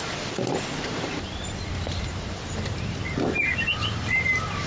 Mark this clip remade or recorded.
remade